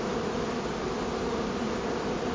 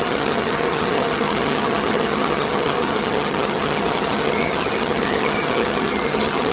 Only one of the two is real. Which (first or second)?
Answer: first